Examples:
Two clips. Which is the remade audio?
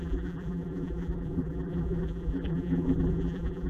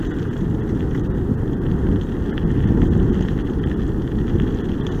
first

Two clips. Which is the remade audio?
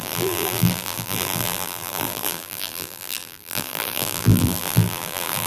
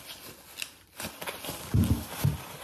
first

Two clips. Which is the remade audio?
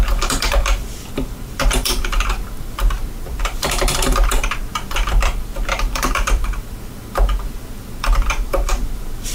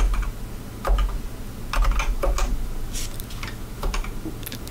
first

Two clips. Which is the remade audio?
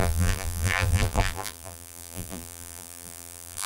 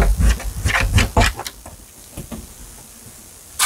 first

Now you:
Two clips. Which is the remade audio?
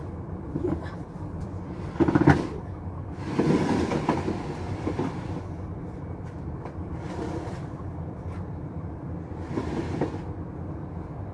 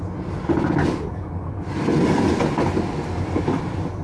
first